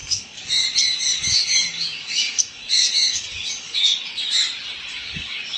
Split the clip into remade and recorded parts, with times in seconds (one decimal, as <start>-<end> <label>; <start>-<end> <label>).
0.0-0.7 remade; 0.7-1.1 recorded; 1.1-4.3 remade; 4.3-4.9 recorded; 4.9-5.6 remade